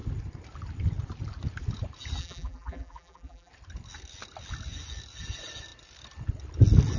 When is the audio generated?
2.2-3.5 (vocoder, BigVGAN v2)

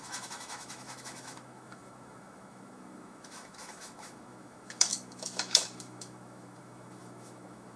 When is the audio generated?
0.0-7.8 (autoencoder, DAC-VAE)

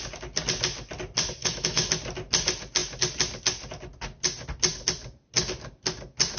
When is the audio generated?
1.4-1.9 (autoencoder, DAC-VAE)

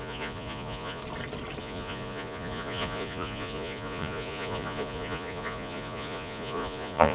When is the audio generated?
0.0-1.0 (vocoder, Vocos); 1.6-7.1

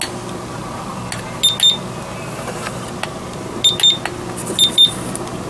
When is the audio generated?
none